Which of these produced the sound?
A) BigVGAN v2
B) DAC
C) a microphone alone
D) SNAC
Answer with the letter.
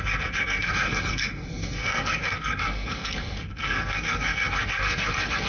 D